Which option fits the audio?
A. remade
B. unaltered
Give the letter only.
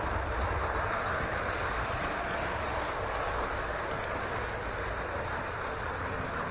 B